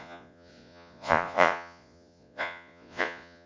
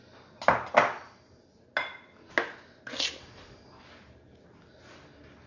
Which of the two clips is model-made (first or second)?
first